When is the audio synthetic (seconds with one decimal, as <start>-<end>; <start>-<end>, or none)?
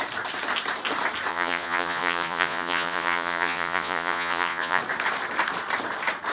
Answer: 1.3-4.8